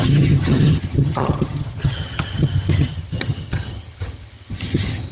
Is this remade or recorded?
remade